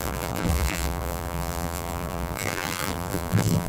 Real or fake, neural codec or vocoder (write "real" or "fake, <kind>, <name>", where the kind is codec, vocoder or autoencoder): fake, vocoder, BigVGAN v2